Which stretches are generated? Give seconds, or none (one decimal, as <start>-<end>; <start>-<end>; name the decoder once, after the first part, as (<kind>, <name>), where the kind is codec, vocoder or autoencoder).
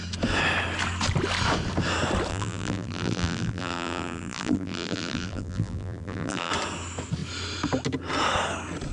2.3-6.5 (vocoder, BigVGAN v2)